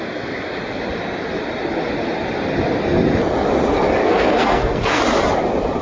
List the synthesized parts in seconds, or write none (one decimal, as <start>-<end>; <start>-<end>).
4.0-5.0